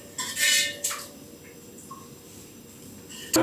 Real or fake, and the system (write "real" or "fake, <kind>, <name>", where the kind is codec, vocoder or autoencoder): real